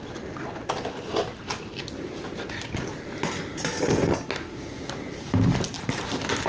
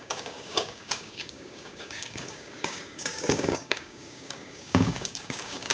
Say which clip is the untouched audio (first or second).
first